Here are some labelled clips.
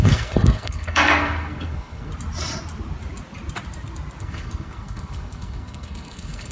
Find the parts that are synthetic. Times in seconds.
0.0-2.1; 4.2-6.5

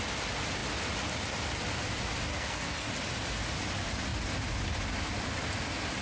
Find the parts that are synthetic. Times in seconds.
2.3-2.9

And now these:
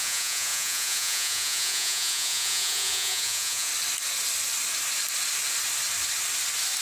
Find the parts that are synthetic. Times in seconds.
0.0-3.7

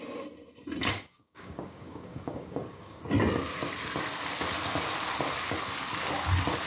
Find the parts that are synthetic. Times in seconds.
0.8-3.0

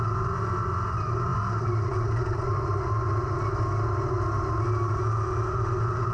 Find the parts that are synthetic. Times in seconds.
none